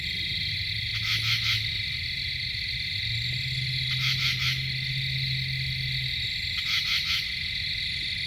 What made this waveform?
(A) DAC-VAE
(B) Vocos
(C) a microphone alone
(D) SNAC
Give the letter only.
C